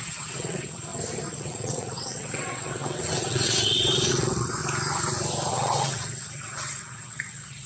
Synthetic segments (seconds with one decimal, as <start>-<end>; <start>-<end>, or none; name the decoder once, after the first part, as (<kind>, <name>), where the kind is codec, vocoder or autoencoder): 0.0-0.9 (vocoder, WaveNeXt); 1.4-4.6; 5.5-7.7